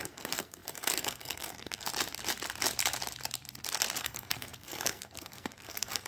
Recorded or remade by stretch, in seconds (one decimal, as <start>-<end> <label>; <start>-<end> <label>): 0.0-1.9 remade; 1.9-4.0 recorded; 4.0-6.1 remade

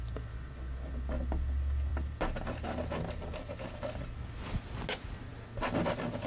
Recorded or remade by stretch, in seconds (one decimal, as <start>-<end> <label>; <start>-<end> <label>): 0.0-6.3 recorded

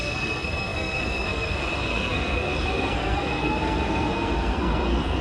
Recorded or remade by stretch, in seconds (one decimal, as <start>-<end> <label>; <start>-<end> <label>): 0.0-5.2 remade

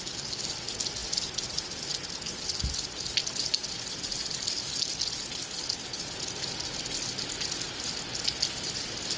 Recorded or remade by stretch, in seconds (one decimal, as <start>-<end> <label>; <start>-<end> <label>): 0.0-9.2 recorded

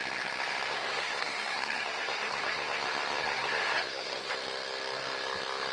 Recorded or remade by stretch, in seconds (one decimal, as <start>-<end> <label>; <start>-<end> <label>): 0.0-0.7 recorded; 0.7-2.8 remade; 2.8-3.2 recorded; 3.2-4.3 remade; 4.3-5.7 recorded

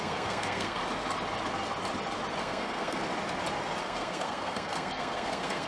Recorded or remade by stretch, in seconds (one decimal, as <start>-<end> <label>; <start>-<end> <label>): 0.0-0.8 remade; 0.8-2.4 recorded; 2.4-3.0 remade; 3.0-3.8 recorded; 3.8-5.7 remade

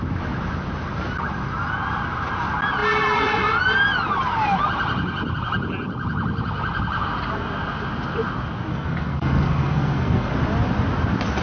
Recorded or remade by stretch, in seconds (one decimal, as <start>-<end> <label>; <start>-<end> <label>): 0.0-8.7 recorded; 8.7-10.3 remade; 10.3-11.4 recorded

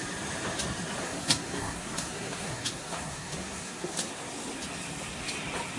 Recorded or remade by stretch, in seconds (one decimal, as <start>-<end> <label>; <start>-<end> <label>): 0.0-1.0 recorded; 1.0-4.1 remade; 4.1-5.8 recorded